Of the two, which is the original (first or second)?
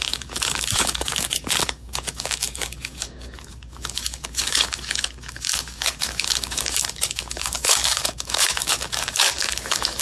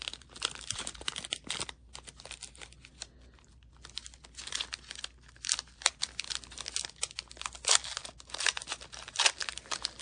second